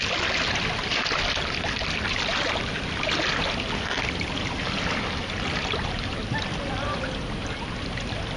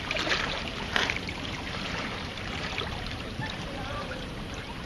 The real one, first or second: first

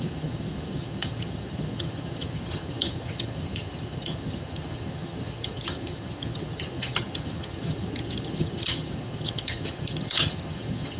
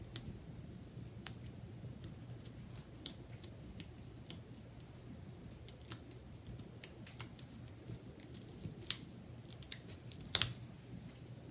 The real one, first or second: second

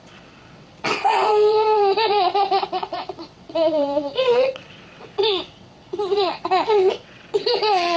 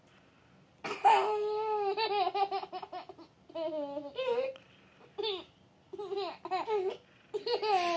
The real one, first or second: second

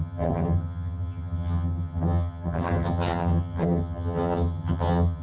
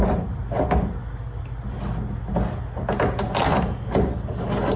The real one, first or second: second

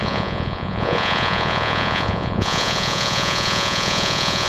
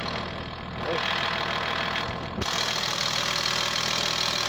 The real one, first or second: second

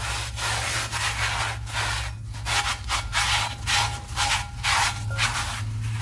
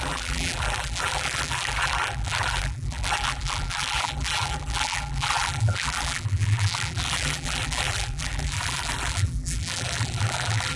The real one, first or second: first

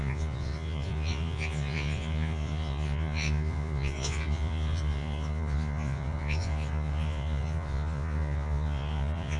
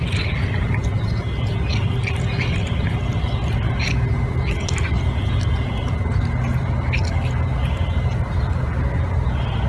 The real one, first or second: second